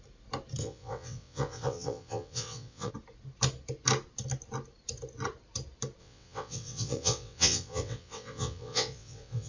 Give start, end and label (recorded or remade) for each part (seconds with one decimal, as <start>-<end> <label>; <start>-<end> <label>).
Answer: 0.0-0.6 recorded; 0.6-2.9 remade; 2.9-6.0 recorded; 6.0-9.5 remade